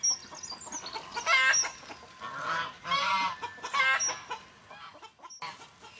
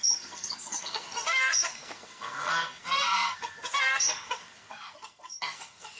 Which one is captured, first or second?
first